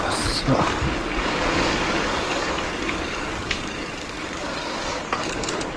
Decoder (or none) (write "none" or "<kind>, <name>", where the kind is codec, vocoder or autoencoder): codec, DAC